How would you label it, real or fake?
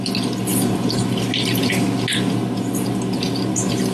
real